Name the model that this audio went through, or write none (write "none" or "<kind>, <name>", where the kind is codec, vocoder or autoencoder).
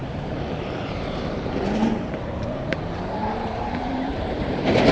vocoder, BigVGAN v2